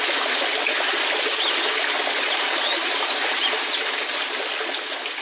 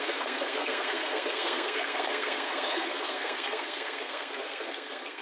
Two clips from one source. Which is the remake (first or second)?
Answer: second